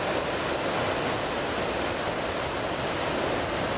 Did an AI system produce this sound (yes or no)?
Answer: no